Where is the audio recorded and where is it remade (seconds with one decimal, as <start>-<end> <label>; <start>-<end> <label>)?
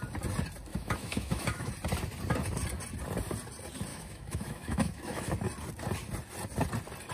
0.0-0.7 recorded; 0.7-1.7 remade; 1.7-3.9 recorded; 3.9-5.3 remade; 5.3-7.1 recorded